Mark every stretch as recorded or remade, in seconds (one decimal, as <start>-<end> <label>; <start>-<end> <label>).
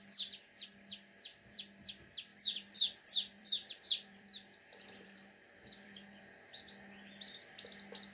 0.0-1.3 recorded; 1.3-1.9 remade; 1.9-2.3 recorded; 2.3-6.2 remade; 6.2-8.1 recorded